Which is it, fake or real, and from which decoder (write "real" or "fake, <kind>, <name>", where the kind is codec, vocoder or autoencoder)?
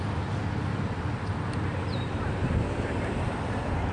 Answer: real